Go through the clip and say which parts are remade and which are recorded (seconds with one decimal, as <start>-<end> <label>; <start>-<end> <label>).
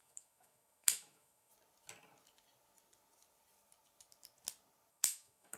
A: 0.0-1.5 remade; 1.5-4.9 recorded; 4.9-5.6 remade